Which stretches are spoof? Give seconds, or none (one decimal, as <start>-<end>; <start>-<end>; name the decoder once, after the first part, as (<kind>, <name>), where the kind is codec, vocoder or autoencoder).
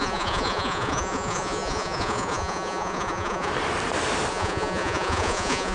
0.0-3.5 (vocoder, Vocos); 4.3-5.7